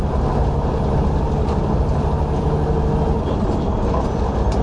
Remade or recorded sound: recorded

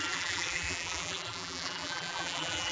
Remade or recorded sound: remade